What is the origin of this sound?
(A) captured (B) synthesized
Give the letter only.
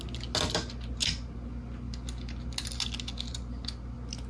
A